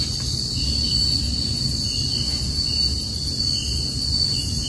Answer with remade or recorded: recorded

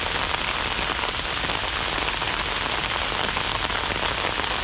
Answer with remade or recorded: recorded